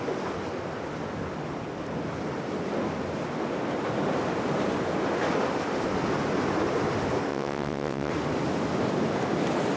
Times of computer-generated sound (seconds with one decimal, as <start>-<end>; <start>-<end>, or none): 7.3-8.1